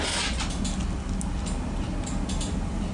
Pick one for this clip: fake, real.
real